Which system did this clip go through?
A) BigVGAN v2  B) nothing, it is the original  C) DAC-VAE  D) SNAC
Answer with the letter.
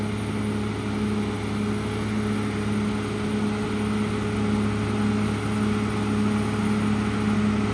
B